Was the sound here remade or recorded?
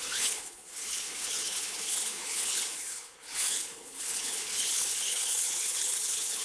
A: remade